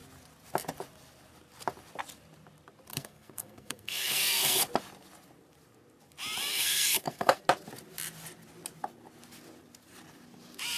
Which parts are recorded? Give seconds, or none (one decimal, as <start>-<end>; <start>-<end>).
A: 0.0-2.9; 4.6-6.5; 7.4-10.8